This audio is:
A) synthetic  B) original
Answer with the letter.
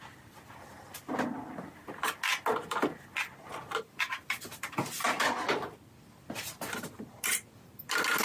B